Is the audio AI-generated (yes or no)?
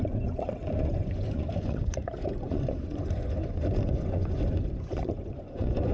yes